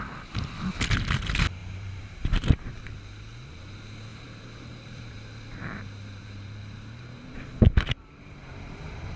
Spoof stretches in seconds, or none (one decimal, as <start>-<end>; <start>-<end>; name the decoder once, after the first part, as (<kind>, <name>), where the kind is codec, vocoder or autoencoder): 1.6-3.0 (vocoder, BigVGAN v2); 4.1-9.2